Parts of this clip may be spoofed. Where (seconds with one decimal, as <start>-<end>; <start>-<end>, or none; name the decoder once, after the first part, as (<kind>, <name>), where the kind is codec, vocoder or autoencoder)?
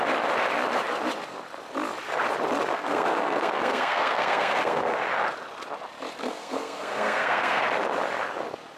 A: 2.7-5.0 (codec, SNAC); 6.2-7.6